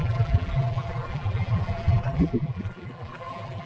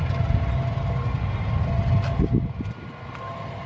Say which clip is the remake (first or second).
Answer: first